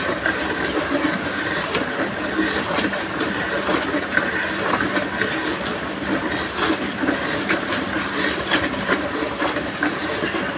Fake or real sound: fake